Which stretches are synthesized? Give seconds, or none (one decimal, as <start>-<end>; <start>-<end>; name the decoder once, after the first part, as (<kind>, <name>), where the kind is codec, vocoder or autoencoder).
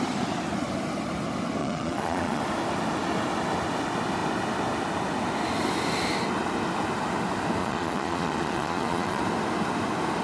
1.6-2.4 (vocoder, Vocos); 7.6-9.2